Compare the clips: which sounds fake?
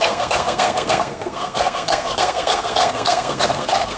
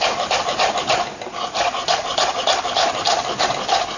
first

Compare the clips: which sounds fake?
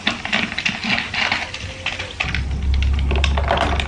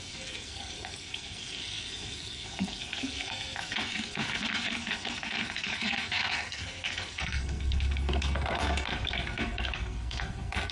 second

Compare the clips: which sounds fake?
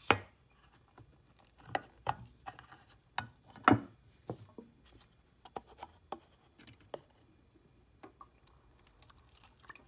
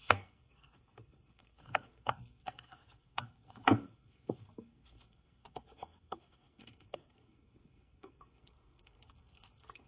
second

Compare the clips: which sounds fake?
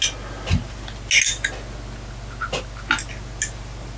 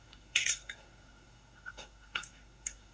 second